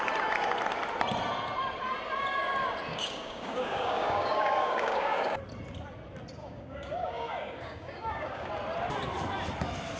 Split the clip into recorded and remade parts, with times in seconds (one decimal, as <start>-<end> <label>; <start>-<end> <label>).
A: 0.0-2.9 recorded; 2.9-5.4 remade; 5.4-6.4 recorded; 6.4-8.5 remade; 8.5-10.0 recorded